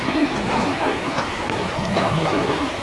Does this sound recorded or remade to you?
remade